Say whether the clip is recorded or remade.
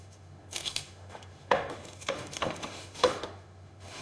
remade